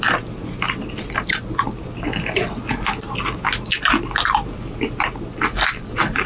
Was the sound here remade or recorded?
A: recorded